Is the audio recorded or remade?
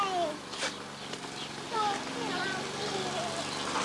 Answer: recorded